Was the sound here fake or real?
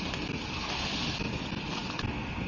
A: real